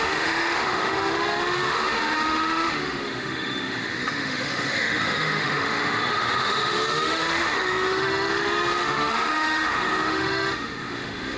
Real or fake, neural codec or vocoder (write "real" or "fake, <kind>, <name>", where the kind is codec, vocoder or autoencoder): fake, autoencoder, DAC-VAE